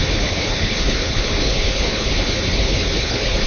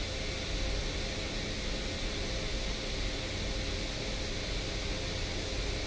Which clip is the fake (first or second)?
first